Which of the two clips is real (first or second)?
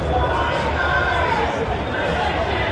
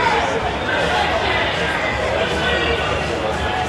second